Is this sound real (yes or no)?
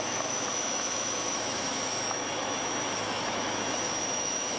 no